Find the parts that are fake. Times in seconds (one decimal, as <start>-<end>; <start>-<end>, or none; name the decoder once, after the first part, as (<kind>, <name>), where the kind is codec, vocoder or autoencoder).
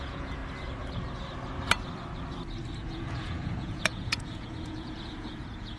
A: 0.0-0.4 (vocoder, Vocos); 2.8-5.8